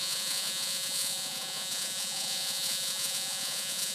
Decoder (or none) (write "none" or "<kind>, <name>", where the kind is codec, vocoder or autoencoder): vocoder, Vocos